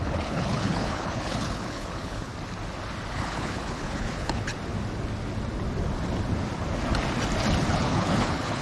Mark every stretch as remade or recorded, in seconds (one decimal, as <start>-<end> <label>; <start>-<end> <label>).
0.0-2.3 remade; 2.3-3.1 recorded; 3.1-4.5 remade; 4.5-7.7 recorded; 7.7-8.6 remade